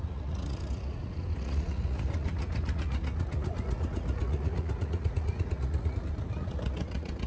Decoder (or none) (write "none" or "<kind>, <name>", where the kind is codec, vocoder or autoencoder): vocoder, Vocos